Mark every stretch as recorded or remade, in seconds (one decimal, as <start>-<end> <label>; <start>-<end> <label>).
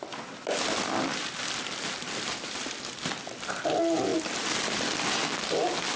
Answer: 0.0-6.0 recorded